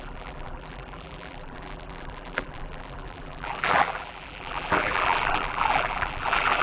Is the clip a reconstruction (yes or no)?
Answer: yes